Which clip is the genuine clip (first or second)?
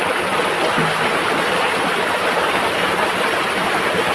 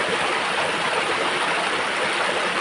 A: first